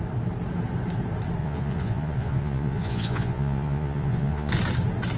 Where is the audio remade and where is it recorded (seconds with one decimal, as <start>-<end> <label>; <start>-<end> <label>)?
0.0-1.4 recorded; 1.4-4.5 remade; 4.5-5.2 recorded